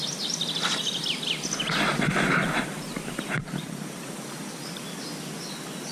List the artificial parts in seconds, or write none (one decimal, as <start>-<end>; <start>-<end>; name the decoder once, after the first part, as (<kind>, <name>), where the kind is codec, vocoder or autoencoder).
1.9-4.4 (vocoder, BigVGAN v2)